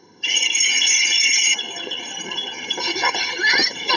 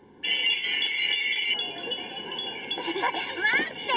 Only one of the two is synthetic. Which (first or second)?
first